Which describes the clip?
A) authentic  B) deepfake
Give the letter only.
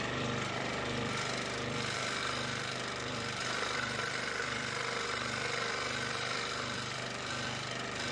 B